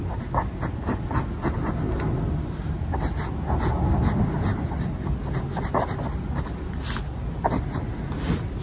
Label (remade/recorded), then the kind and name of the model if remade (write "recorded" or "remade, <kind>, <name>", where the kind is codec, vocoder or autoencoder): recorded